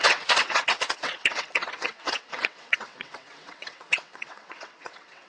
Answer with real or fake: fake